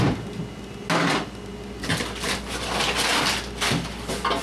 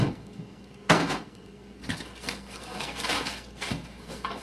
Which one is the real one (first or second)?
first